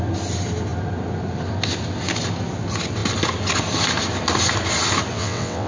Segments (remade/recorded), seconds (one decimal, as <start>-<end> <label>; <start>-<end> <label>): 0.0-5.1 recorded; 5.1-5.7 remade